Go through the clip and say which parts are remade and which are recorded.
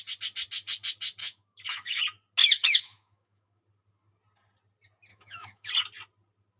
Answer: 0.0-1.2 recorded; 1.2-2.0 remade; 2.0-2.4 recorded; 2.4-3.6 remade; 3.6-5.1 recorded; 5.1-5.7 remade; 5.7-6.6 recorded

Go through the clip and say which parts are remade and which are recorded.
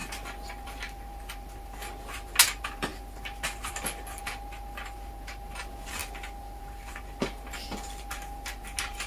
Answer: 0.0-9.1 recorded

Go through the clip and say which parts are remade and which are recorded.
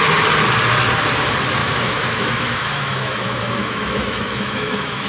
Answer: 0.0-1.6 recorded; 1.6-5.1 remade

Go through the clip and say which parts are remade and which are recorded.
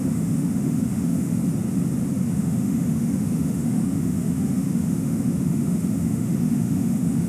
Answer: 0.0-1.4 remade; 1.4-2.3 recorded; 2.3-7.3 remade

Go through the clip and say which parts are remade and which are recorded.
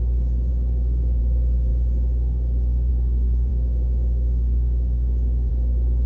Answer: 0.0-3.5 recorded; 3.5-5.5 remade; 5.5-6.1 recorded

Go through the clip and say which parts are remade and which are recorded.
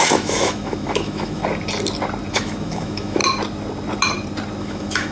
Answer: 0.0-1.4 remade; 1.4-2.3 recorded; 2.3-3.2 remade; 3.2-4.6 recorded; 4.6-5.1 remade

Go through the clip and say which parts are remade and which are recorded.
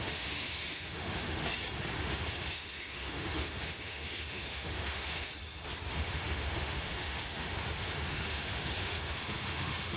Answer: 0.0-1.5 remade; 1.5-2.0 recorded; 2.0-5.3 remade; 5.3-5.9 recorded; 5.9-10.0 remade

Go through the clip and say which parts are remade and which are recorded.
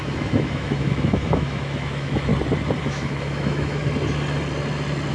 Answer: 0.0-2.3 remade; 2.3-2.8 recorded; 2.8-3.8 remade; 3.8-5.1 recorded